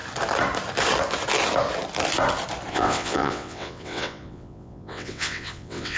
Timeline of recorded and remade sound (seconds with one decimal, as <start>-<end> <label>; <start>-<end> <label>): 0.0-2.7 recorded; 2.7-6.0 remade